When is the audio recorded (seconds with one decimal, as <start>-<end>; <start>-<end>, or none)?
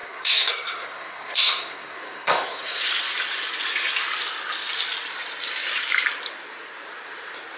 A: 2.8-7.6